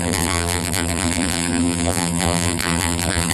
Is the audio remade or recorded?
remade